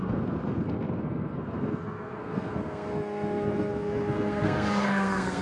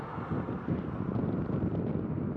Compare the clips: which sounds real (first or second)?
second